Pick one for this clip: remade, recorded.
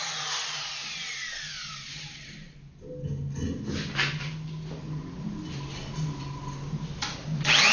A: recorded